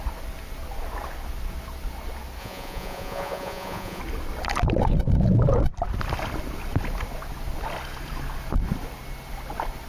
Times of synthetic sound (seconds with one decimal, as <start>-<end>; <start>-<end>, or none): 2.4-4.0

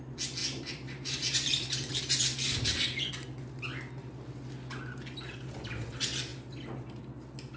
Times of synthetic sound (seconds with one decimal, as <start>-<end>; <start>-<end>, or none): 0.4-3.1

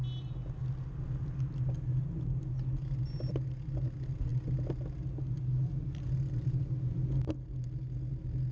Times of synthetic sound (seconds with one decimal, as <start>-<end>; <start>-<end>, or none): none

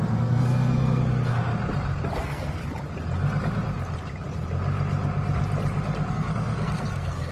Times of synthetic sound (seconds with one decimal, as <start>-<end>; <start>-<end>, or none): 0.0-1.5; 2.2-2.6; 6.1-7.3

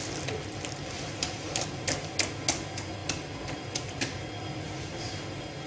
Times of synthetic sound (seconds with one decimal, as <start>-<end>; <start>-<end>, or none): none

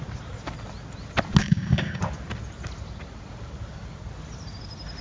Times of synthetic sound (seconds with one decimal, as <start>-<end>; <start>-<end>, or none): 1.4-2.0